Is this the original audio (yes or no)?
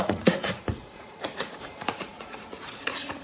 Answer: no